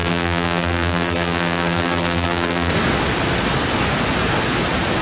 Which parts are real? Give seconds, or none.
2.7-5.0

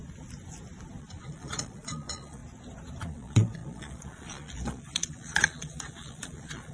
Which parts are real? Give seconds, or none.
0.0-1.0; 2.4-3.0